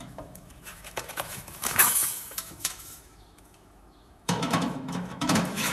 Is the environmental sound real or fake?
fake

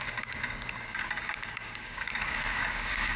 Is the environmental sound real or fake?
fake